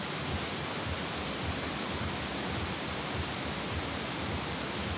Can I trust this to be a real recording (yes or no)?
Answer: yes